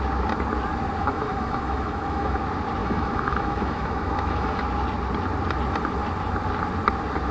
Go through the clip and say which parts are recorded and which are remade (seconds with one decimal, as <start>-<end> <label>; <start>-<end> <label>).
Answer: 0.0-1.0 recorded; 1.0-2.4 remade; 2.4-2.8 recorded; 2.8-4.6 remade; 4.6-7.3 recorded